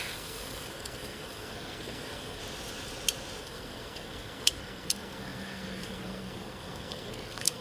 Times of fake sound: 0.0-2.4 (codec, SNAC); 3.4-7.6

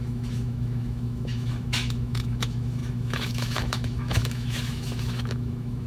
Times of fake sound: 0.0-5.9 (autoencoder, DAC-VAE)

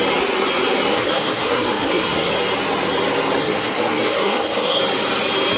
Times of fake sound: 0.9-2.3 (codec, SNAC); 3.4-4.8

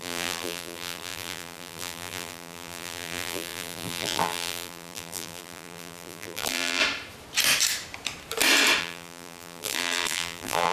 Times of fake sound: 0.0-6.8 (vocoder, BigVGAN v2); 8.8-10.7

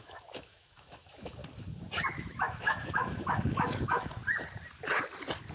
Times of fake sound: 0.0-1.4 (autoencoder, DAC-VAE); 2.1-4.2